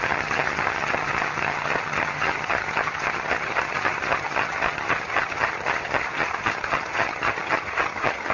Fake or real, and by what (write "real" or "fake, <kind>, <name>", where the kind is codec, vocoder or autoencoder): fake, vocoder, HiFi-GAN